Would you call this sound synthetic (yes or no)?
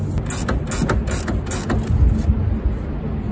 no